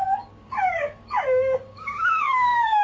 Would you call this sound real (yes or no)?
no